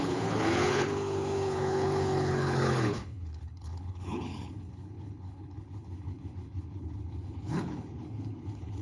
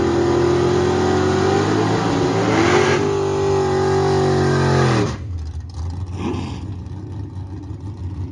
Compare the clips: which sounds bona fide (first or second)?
second